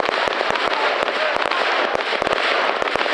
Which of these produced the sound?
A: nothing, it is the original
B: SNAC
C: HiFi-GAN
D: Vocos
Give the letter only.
A